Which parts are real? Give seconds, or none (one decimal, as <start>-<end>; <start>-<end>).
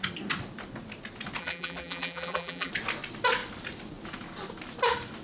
0.0-1.4; 2.7-5.2